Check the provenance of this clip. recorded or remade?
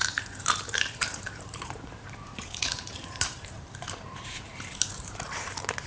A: remade